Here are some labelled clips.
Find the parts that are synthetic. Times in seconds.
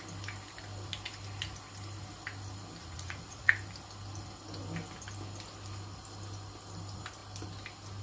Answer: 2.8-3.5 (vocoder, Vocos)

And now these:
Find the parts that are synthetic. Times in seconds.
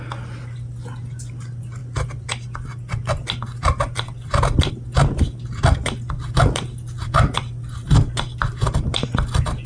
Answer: none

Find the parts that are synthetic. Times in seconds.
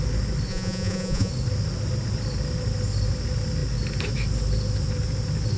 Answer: 0.5-1.3 (vocoder, Vocos)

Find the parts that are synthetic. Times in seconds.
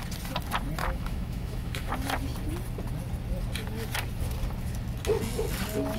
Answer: 0.8-1.9 (autoencoder, DAC-VAE)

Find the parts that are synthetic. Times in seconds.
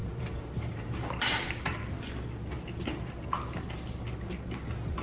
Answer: 0.0-1.1 (vocoder, BigVGAN v2)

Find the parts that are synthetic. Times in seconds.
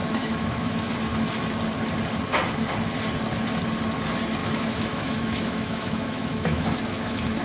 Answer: 0.0-0.9 (autoencoder, DAC-VAE); 4.4-7.4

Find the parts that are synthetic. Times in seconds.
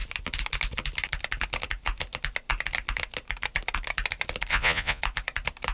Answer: 4.5-5.0 (vocoder, Vocos)